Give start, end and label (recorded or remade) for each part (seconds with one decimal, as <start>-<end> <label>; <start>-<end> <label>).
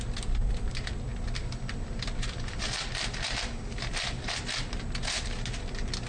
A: 0.0-6.1 recorded